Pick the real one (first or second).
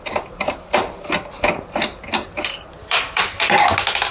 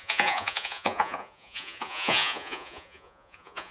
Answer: first